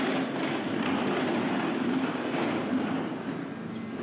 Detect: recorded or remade recorded